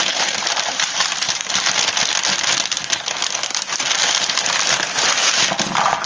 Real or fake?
real